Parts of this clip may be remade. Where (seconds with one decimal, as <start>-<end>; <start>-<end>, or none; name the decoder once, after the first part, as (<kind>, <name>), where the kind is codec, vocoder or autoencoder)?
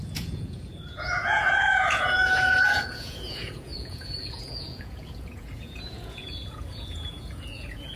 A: 0.0-8.0 (vocoder, Vocos)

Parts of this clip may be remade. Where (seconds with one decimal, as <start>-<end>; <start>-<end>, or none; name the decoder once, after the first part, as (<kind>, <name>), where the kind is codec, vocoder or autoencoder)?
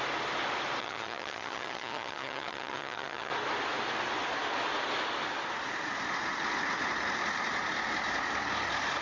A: 0.8-3.3 (vocoder, HiFi-GAN)